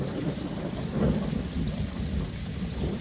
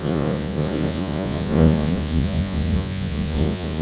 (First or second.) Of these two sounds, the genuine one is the first